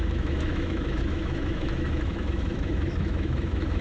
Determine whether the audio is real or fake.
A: fake